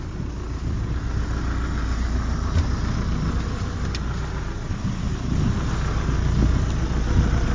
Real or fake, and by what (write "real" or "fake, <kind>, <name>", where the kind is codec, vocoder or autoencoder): real